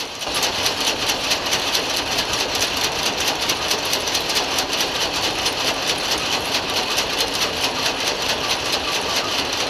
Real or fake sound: fake